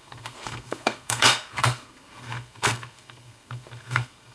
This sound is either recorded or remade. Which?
remade